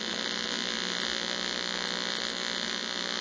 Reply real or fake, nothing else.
real